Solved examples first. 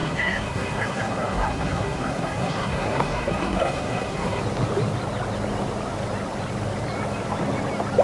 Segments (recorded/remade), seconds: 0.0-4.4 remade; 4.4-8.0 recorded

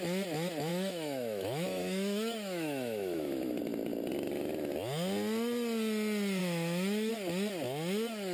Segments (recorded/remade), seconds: 0.0-0.7 recorded; 0.7-3.6 remade; 3.6-6.4 recorded; 6.4-7.1 remade; 7.1-8.3 recorded

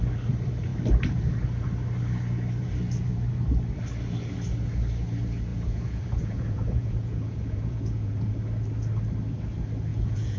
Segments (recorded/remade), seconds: 0.0-5.5 recorded; 5.5-8.3 remade; 8.3-9.9 recorded; 9.9-10.4 remade

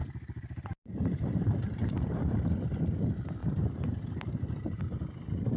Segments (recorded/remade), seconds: 0.0-2.4 remade; 2.4-3.4 recorded; 3.4-4.8 remade; 4.8-5.6 recorded

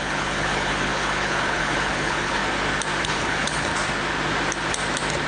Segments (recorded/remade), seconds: 0.0-2.4 remade; 2.4-3.0 recorded; 3.0-3.7 remade; 3.7-5.3 recorded

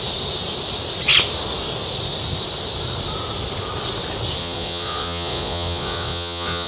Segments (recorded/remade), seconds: 0.0-4.4 recorded; 4.4-6.7 remade

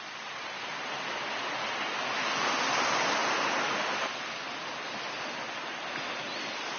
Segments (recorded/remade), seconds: 0.0-6.8 recorded

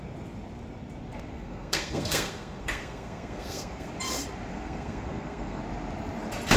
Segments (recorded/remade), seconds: 0.0-1.1 recorded; 1.1-3.9 remade; 3.9-4.5 recorded; 4.5-5.6 remade; 5.6-6.6 recorded